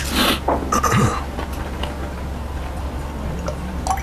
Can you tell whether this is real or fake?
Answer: real